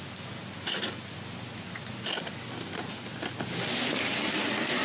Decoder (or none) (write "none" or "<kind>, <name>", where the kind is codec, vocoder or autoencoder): none